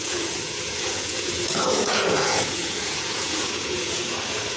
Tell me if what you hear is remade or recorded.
remade